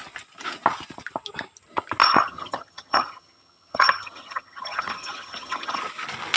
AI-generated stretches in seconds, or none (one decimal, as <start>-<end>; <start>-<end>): 2.0-5.8